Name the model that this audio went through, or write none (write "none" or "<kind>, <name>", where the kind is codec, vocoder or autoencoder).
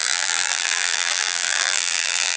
vocoder, BigVGAN v2